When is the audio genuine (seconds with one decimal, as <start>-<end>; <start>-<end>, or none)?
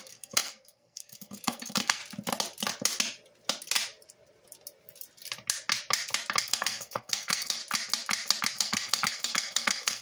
2.0-6.4; 7.6-8.5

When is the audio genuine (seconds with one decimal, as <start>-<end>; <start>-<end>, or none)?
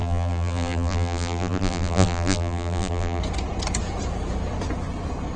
3.2-5.4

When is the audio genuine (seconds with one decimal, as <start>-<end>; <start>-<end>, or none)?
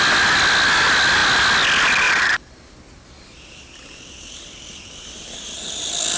0.0-6.2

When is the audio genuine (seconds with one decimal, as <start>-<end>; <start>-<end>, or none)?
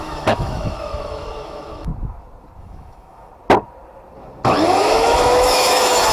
1.9-2.6; 3.3-4.8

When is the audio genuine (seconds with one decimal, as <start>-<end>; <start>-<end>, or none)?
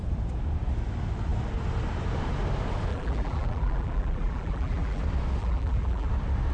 0.0-2.9; 5.0-5.4; 6.1-6.5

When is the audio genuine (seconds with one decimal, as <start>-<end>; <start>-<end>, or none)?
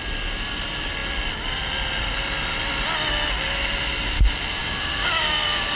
0.0-4.6